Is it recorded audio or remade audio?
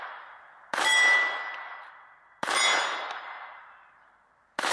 recorded